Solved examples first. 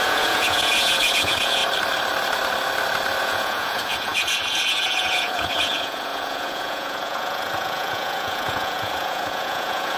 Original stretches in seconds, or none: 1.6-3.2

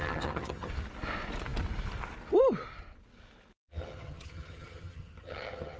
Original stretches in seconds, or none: 0.7-3.7

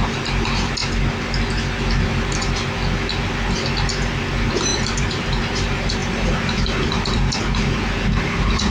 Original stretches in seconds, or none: 0.0-4.7; 5.4-6.0; 7.4-8.7

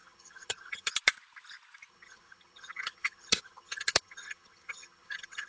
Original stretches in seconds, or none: 0.9-1.9

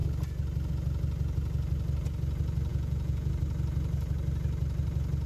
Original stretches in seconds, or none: 0.0-2.7; 3.3-5.3

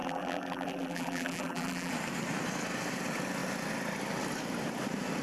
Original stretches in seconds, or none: 1.9-5.2

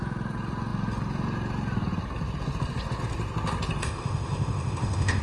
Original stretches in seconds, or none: 0.0-3.8